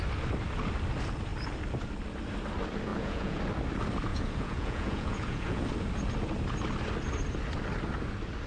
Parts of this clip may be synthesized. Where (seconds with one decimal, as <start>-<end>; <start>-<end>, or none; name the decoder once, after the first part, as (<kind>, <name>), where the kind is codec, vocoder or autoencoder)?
2.9-3.4 (vocoder, Vocos); 4.1-5.6